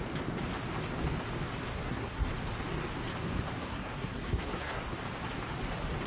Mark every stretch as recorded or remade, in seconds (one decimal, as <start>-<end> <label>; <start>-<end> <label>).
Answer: 0.0-1.7 recorded; 1.7-2.3 remade; 2.3-3.7 recorded; 3.7-4.8 remade; 4.8-6.1 recorded